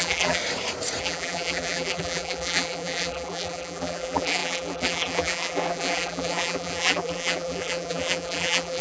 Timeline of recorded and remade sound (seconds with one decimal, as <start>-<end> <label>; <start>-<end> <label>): 0.0-0.4 remade; 0.4-1.0 recorded; 1.0-8.8 remade